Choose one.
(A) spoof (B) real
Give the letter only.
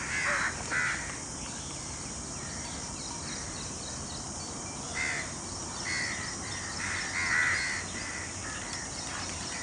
B